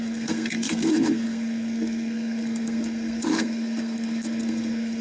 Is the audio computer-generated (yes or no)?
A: yes